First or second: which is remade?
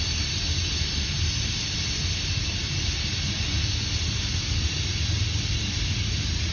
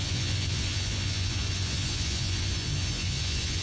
second